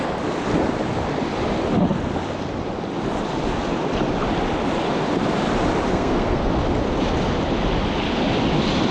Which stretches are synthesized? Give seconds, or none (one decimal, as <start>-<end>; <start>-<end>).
5.9-6.5